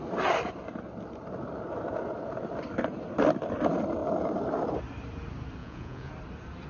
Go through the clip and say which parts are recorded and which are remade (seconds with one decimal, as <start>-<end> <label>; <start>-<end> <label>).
0.0-5.6 recorded; 5.6-6.1 remade; 6.1-6.7 recorded